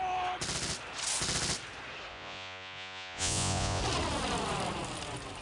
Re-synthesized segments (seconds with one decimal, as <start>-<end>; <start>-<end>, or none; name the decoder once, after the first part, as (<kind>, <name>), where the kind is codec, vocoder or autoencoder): 2.1-3.8 (vocoder, Vocos)